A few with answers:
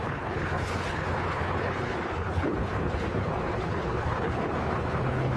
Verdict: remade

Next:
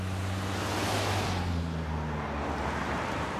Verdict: recorded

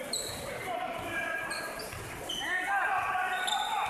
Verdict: recorded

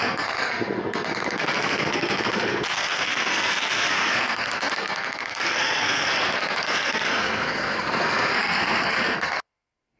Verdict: remade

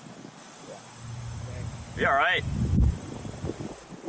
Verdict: recorded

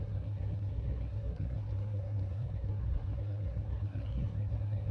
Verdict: remade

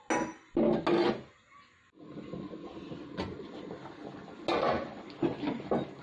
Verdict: recorded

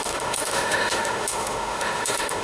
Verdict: remade